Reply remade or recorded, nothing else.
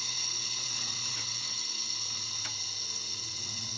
remade